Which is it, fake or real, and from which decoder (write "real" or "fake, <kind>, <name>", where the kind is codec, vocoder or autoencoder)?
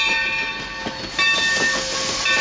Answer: real